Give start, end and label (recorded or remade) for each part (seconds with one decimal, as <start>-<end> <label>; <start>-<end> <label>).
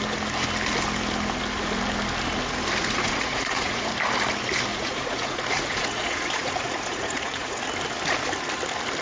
0.0-2.8 recorded; 2.8-3.9 remade; 3.9-4.7 recorded; 4.7-7.6 remade; 7.6-9.0 recorded